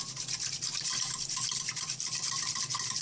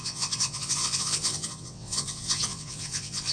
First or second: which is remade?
second